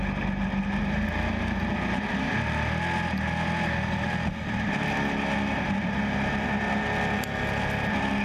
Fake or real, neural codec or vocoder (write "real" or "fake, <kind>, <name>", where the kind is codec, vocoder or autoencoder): real